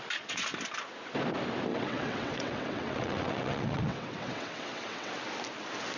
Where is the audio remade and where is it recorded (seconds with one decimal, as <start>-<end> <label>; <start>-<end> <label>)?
0.0-1.7 recorded; 1.7-5.1 remade; 5.1-6.0 recorded